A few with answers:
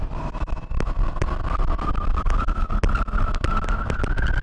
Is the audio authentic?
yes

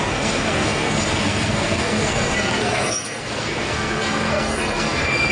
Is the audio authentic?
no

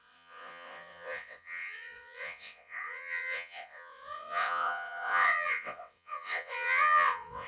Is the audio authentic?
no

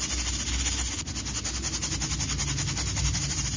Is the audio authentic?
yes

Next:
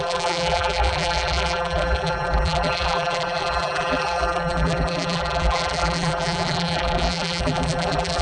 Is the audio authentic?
no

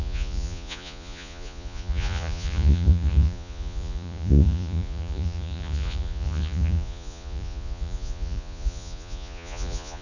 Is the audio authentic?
no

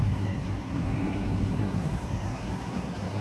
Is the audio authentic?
no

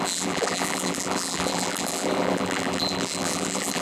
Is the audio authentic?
no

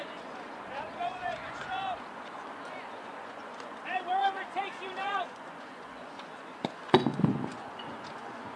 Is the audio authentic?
no